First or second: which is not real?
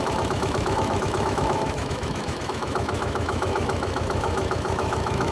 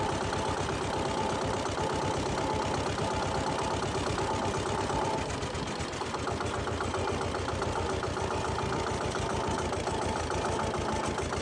first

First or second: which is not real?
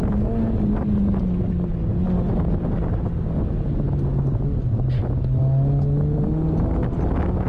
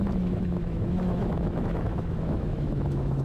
second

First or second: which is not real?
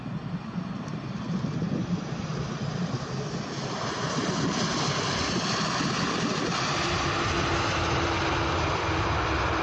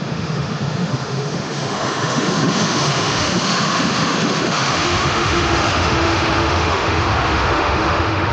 second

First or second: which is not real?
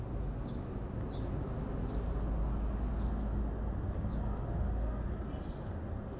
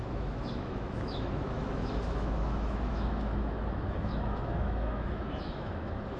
second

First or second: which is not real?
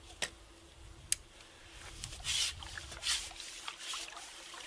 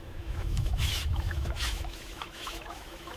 second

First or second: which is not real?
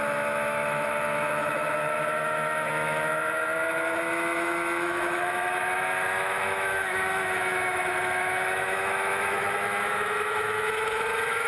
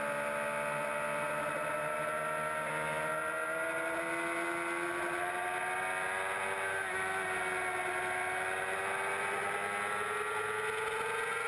first